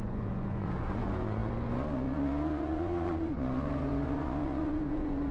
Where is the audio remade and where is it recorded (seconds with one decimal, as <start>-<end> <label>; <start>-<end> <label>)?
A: 0.0-5.3 remade